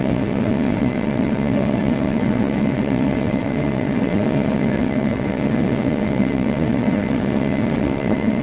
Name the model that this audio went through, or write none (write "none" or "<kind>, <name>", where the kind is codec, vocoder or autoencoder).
vocoder, WaveNeXt